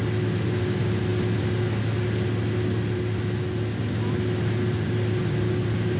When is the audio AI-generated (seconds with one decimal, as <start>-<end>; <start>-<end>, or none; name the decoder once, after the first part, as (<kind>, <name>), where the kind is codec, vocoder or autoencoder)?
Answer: none